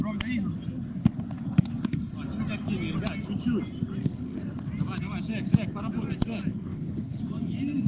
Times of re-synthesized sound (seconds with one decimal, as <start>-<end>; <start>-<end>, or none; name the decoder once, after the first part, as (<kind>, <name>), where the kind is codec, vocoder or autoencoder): 6.7-7.2 (codec, HILCodec)